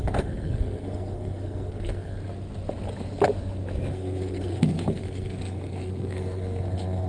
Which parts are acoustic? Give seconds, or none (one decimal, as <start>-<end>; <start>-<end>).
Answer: 2.2-3.9